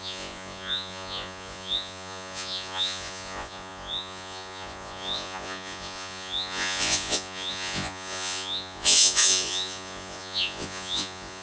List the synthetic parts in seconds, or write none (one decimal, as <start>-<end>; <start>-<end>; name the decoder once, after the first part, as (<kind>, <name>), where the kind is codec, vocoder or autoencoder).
0.0-11.4 (vocoder, Vocos)